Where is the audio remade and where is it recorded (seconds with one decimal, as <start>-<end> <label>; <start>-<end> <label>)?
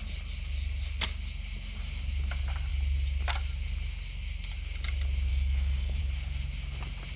0.0-5.3 recorded; 5.3-6.0 remade; 6.0-7.2 recorded